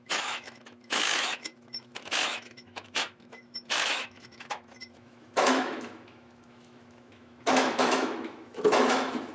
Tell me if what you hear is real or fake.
fake